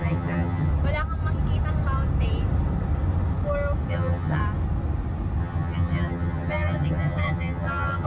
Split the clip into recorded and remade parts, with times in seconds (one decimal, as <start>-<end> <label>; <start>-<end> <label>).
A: 0.0-0.7 remade; 0.7-3.9 recorded; 3.9-4.4 remade; 4.4-5.4 recorded; 5.4-8.1 remade